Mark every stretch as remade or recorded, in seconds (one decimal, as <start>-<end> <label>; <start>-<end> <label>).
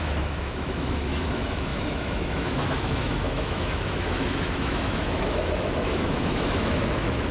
0.0-7.3 remade